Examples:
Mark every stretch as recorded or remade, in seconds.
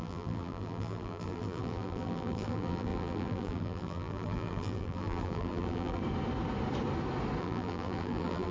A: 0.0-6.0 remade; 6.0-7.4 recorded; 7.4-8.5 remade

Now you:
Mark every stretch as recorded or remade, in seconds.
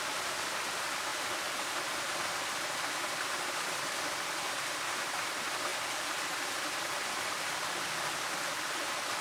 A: 0.0-9.2 recorded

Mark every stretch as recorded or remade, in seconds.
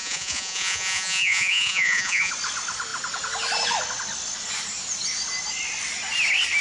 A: 0.0-2.3 remade; 2.3-6.6 recorded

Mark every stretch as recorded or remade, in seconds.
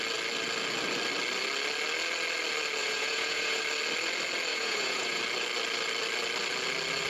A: 0.0-2.8 recorded; 2.8-3.6 remade; 3.6-4.5 recorded; 4.5-5.2 remade; 5.2-7.1 recorded